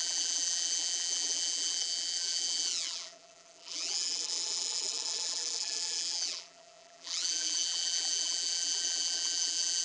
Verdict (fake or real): fake